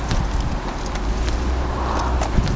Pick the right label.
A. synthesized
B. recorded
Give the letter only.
B